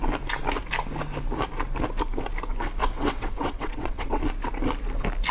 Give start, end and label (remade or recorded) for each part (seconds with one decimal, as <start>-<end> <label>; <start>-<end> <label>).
0.0-2.8 recorded; 2.8-4.2 remade; 4.2-5.3 recorded